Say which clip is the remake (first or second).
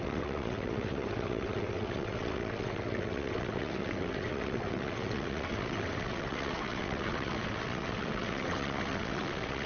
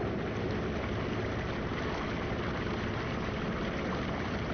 first